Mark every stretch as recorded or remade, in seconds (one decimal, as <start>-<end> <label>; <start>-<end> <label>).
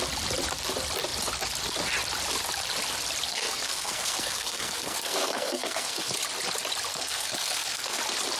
0.0-3.3 recorded; 3.3-6.1 remade; 6.1-6.9 recorded; 6.9-8.0 remade; 8.0-8.4 recorded